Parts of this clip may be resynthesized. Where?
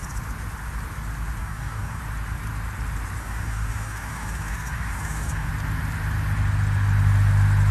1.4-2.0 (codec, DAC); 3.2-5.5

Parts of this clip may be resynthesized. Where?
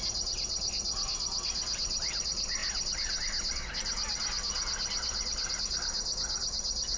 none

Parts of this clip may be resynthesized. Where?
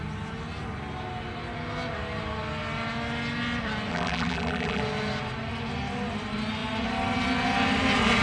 3.9-4.8 (vocoder, BigVGAN v2)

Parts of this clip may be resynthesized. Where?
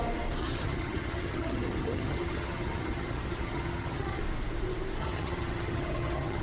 0.4-4.2 (vocoder, HiFi-GAN); 5.0-6.4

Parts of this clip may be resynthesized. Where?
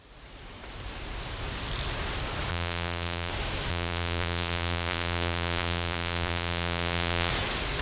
2.5-3.3 (vocoder, BigVGAN v2); 3.7-7.3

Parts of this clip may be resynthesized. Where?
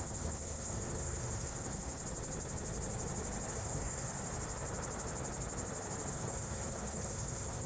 0.0-2.0 (codec, SNAC); 3.5-4.1; 6.1-7.7